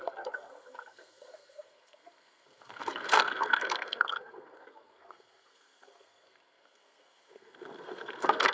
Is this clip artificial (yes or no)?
yes